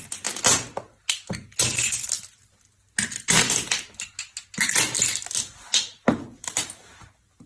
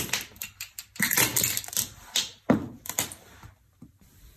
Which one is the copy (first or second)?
second